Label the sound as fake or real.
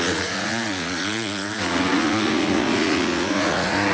fake